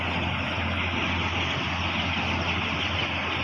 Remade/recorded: recorded